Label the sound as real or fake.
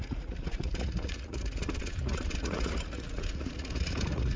fake